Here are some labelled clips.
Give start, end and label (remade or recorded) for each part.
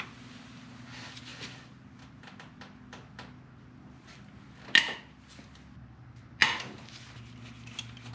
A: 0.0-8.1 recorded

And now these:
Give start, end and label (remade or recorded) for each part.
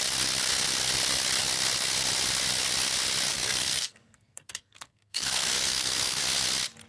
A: 0.0-3.3 recorded; 3.3-6.2 remade; 6.2-6.9 recorded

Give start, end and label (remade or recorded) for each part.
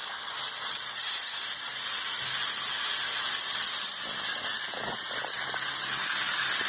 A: 0.0-6.7 recorded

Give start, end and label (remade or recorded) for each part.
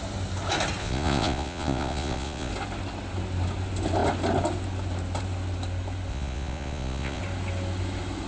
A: 0.0-0.8 recorded; 0.8-2.5 remade; 2.5-6.1 recorded; 6.1-7.2 remade; 7.2-8.3 recorded